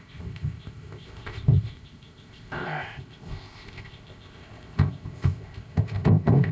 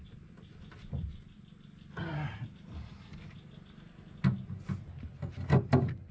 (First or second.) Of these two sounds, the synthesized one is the first